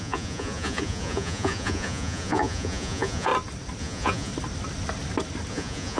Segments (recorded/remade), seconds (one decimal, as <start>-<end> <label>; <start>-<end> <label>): 0.0-3.3 remade; 3.3-3.8 recorded; 3.8-4.3 remade; 4.3-5.5 recorded; 5.5-6.0 remade